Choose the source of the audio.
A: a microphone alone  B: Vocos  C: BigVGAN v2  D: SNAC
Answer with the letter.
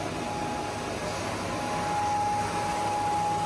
A